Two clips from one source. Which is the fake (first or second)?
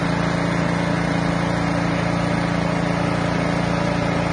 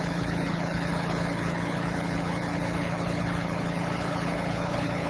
second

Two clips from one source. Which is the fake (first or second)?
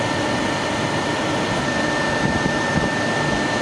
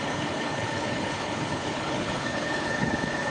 second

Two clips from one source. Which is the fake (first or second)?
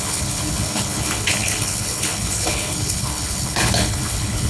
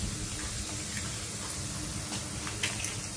first